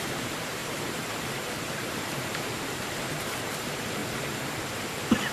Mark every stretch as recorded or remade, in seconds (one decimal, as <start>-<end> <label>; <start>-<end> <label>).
0.0-0.6 remade; 0.6-1.9 recorded; 1.9-4.0 remade; 4.0-5.3 recorded